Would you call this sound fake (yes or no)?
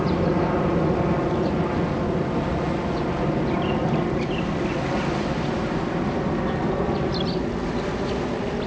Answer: no